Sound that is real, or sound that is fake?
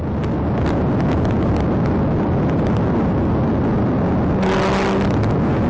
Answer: real